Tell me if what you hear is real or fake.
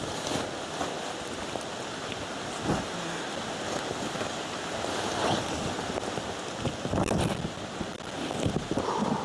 real